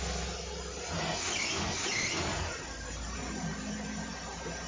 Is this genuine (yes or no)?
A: yes